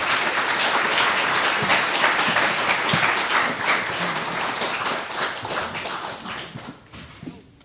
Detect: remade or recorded recorded